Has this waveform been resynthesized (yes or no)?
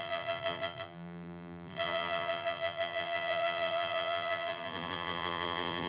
yes